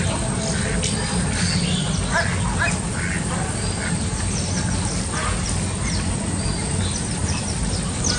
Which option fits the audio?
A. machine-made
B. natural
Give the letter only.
B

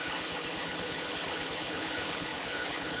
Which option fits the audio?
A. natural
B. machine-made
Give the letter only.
B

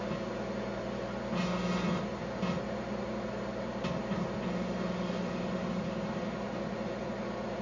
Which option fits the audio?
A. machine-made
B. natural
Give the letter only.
B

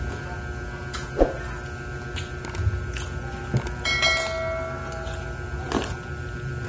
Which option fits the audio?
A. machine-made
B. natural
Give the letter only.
B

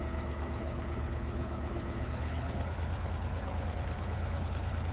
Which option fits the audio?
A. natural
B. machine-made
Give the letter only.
B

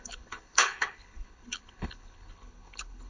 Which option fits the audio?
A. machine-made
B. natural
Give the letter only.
A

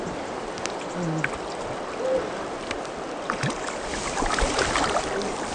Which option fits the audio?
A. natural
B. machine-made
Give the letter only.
A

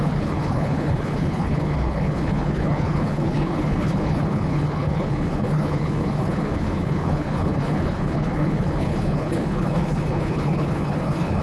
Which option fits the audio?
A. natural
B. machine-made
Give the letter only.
B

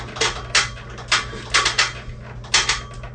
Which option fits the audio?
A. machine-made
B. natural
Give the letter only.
B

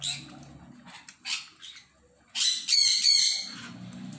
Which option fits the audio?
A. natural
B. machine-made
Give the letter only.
A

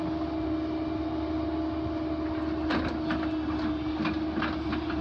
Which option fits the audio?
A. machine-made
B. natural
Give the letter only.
B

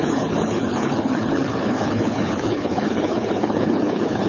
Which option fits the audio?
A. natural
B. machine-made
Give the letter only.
B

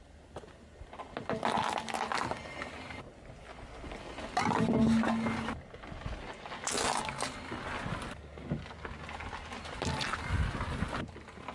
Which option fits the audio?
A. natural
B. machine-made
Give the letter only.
A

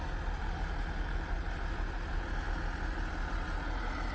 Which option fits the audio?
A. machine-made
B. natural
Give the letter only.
B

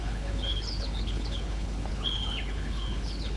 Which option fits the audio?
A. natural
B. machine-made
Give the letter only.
B